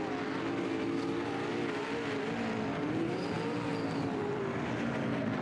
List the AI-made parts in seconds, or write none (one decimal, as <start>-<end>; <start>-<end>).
3.7-4.2